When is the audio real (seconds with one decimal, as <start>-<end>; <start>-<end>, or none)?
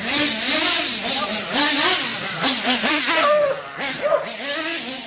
0.0-2.1; 3.0-5.1